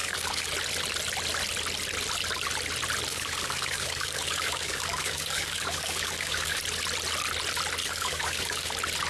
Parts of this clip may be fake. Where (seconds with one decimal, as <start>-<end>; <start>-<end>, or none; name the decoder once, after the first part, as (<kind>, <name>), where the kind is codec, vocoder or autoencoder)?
0.0-0.5 (codec, DAC); 3.1-6.6; 7.8-8.7